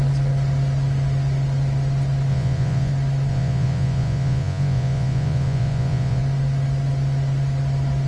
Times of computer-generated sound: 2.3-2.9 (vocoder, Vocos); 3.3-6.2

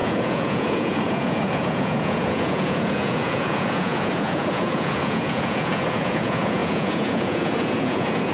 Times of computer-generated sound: 0.0-8.3 (vocoder, Vocos)

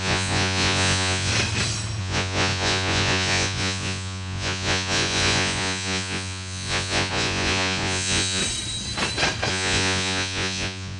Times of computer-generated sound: 0.0-1.3 (vocoder, Vocos); 2.0-8.4; 9.5-11.0

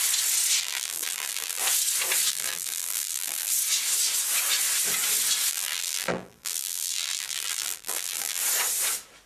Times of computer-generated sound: 0.6-1.6 (vocoder, BigVGAN v2); 2.3-3.5; 5.5-8.4

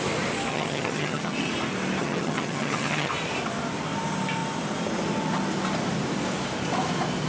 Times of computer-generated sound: 0.5-1.5 (vocoder, HiFi-GAN); 2.0-3.1

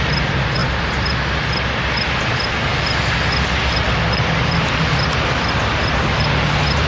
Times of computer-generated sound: none